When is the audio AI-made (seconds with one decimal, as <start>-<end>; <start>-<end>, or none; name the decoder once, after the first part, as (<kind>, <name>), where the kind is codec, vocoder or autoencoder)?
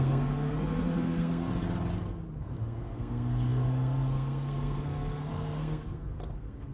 0.0-1.5 (codec, SNAC); 2.4-6.7